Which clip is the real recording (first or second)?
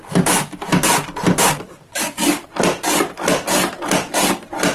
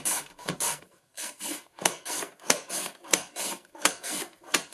first